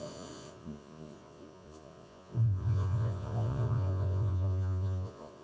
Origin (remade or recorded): remade